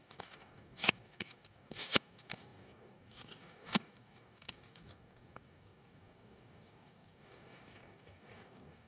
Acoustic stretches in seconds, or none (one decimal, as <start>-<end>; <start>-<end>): none